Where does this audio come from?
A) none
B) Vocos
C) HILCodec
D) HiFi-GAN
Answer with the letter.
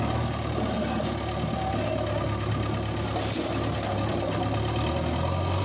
A